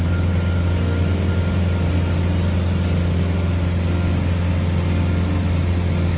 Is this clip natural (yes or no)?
yes